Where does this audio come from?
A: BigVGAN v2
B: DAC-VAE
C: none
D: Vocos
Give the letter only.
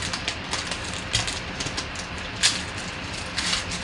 C